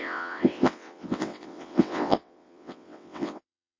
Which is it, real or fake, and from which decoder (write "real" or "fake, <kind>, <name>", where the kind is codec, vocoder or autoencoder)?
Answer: fake, vocoder, WaveNeXt